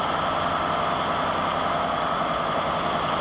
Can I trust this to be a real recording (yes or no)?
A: yes